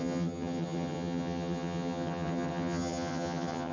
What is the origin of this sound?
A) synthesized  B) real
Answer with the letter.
A